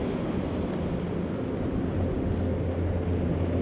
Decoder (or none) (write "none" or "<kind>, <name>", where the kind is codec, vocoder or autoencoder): none